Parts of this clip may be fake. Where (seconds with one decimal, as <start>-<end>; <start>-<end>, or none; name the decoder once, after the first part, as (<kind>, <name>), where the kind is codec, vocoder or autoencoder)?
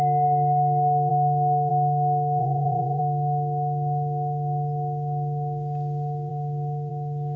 2.4-3.0 (vocoder, Vocos)